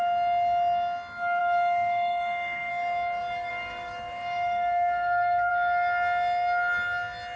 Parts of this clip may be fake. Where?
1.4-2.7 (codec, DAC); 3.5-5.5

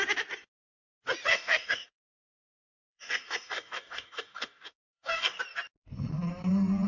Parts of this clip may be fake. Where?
1.3-5.4 (codec, DAC)

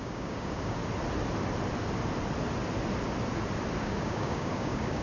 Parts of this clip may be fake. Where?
0.0-0.8 (codec, DAC); 3.8-5.0

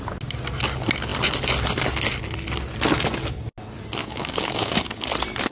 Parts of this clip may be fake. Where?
4.0-5.0 (codec, DAC)